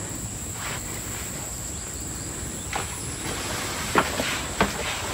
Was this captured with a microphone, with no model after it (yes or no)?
yes